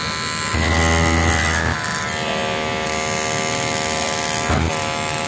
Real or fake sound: real